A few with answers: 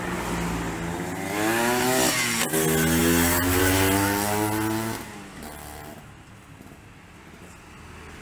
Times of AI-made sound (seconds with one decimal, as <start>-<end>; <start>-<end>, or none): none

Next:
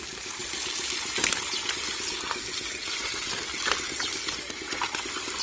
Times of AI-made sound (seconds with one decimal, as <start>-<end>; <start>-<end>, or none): none

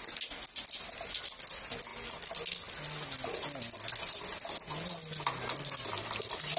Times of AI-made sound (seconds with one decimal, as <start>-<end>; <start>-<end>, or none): none